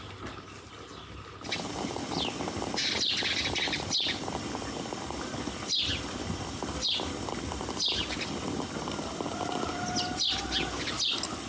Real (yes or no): yes